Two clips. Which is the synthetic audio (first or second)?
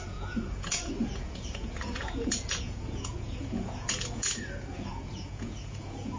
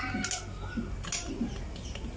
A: first